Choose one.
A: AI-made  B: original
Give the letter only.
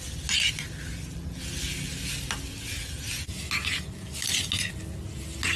B